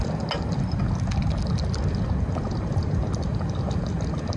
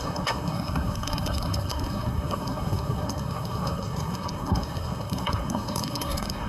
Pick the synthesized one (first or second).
second